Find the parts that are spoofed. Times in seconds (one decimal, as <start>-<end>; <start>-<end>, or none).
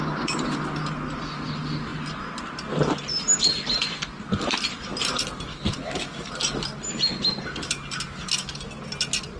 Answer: 5.5-6.3